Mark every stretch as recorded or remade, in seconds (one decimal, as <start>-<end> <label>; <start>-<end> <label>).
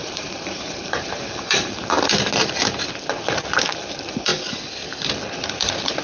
0.0-1.7 remade; 1.7-6.0 recorded